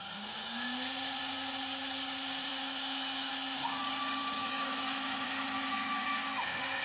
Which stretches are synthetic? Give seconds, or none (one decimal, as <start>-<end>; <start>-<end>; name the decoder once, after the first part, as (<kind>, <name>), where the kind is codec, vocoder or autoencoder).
2.5-3.3 (autoencoder, DAC-VAE); 4.2-6.8